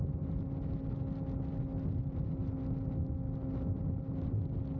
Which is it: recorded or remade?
recorded